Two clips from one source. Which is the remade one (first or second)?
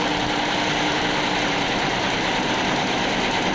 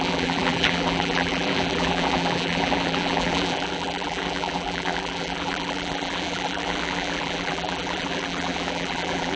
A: second